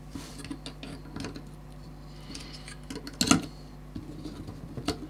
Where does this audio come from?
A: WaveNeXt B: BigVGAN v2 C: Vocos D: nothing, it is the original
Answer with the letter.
D